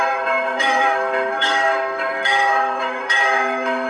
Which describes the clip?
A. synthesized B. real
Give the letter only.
A